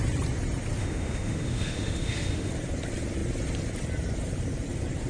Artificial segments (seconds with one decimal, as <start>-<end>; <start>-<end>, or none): 0.8-2.5